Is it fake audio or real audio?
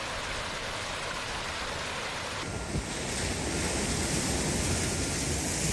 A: real